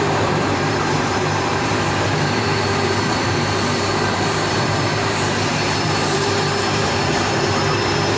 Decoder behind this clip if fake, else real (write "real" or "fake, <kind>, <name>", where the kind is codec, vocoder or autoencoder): fake, vocoder, BigVGAN v2